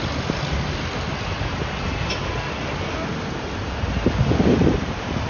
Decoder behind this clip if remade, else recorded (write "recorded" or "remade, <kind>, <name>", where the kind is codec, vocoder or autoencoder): recorded